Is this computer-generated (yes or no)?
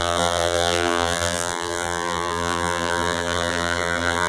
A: yes